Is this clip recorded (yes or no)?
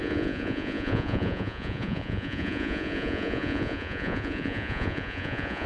no